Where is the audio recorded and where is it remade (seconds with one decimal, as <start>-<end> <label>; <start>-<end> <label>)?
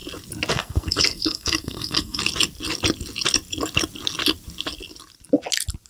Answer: 0.0-0.5 recorded; 0.5-2.2 remade; 2.2-5.9 recorded